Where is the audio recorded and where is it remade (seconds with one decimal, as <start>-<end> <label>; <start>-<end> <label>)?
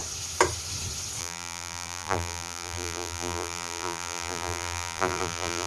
0.0-1.2 recorded; 1.2-5.7 remade